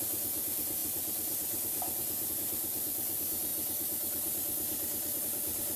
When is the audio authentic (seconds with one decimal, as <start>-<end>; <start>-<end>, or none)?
3.5-5.2